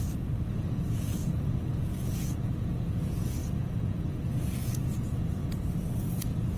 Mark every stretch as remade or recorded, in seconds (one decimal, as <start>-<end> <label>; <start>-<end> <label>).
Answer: 0.0-5.4 remade; 5.4-6.0 recorded; 6.0-6.6 remade

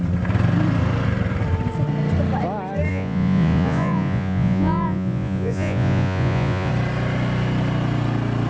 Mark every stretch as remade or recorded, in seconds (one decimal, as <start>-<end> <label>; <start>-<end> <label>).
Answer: 0.0-2.9 recorded; 2.9-6.7 remade; 6.7-8.5 recorded

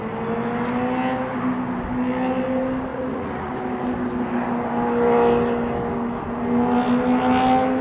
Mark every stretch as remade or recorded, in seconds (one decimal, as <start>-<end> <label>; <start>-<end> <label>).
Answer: 0.0-2.9 recorded; 2.9-3.5 remade; 3.5-7.8 recorded

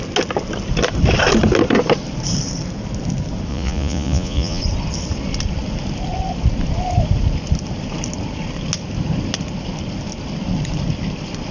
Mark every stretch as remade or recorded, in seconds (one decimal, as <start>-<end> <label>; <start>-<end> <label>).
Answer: 0.0-3.5 recorded; 3.5-4.6 remade; 4.6-11.5 recorded

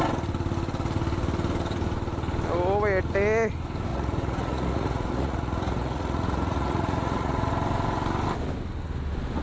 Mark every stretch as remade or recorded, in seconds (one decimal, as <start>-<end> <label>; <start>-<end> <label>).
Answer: 0.0-3.9 recorded; 3.9-7.5 remade; 7.5-9.4 recorded

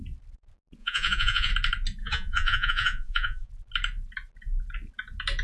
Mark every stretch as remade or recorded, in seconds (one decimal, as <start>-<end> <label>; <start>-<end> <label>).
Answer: 0.0-0.8 recorded; 0.8-1.5 remade; 1.5-2.0 recorded; 2.0-3.5 remade; 3.5-5.4 recorded

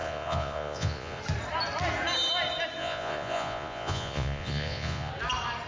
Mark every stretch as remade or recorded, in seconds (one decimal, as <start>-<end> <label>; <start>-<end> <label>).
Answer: 0.0-1.2 remade; 1.2-2.8 recorded; 2.8-5.1 remade; 5.1-5.7 recorded

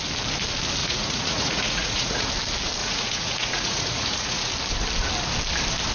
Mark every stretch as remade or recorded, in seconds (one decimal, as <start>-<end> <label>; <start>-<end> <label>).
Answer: 0.0-0.8 recorded; 0.8-2.3 remade; 2.3-2.8 recorded; 2.8-4.5 remade; 4.5-5.9 recorded